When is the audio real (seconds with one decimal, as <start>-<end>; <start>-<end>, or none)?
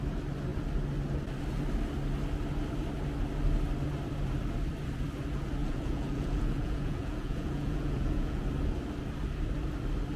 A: 0.0-5.6; 8.4-10.2